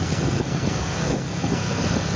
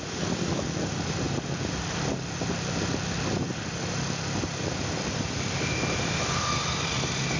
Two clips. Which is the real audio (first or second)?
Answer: second